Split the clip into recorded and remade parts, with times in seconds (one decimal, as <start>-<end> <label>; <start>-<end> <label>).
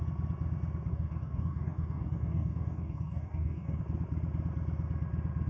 0.0-0.9 recorded; 0.9-3.8 remade; 3.8-5.5 recorded